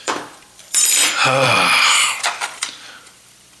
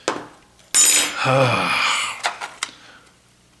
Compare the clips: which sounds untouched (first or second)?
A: second